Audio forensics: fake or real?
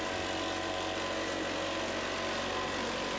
real